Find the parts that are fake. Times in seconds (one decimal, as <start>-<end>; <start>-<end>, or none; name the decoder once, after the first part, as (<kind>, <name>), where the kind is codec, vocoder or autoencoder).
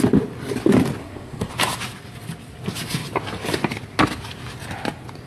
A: 1.0-1.5 (codec, SNAC)